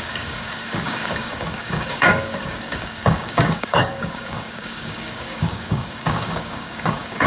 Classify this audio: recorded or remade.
remade